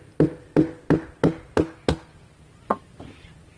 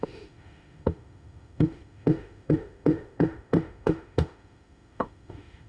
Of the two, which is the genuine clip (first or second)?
first